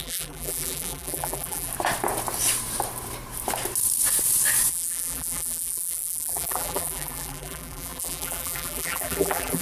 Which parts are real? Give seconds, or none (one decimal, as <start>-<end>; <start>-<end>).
1.7-4.7